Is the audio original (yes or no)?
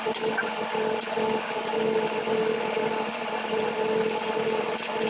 yes